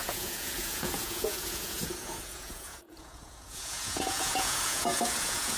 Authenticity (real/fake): fake